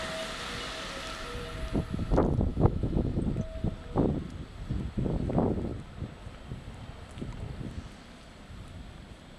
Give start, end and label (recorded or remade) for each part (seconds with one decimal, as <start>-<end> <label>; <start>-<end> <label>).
0.0-2.5 recorded; 2.5-3.2 remade; 3.2-9.4 recorded